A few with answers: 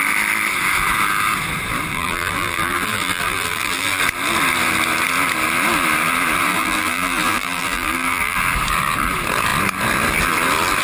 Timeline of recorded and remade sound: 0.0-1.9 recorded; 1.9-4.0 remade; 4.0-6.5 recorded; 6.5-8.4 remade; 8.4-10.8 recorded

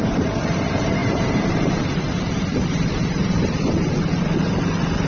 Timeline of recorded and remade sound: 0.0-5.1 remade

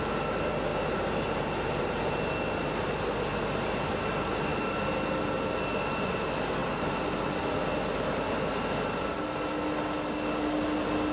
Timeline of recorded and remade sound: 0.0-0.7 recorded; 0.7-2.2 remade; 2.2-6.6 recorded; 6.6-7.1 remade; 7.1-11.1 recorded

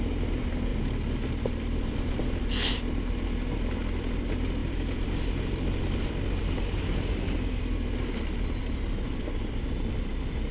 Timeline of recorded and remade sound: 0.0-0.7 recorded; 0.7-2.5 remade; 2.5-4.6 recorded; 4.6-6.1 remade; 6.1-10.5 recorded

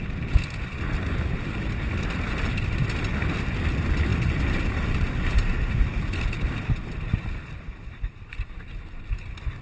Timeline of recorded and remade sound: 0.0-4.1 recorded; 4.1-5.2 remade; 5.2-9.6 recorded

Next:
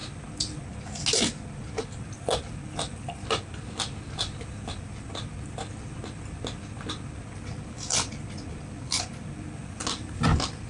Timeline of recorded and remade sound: 0.0-10.7 recorded